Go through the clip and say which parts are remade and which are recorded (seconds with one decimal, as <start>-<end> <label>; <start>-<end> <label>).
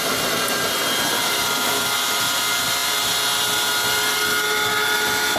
0.0-5.4 recorded